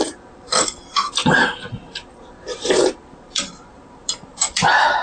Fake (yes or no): yes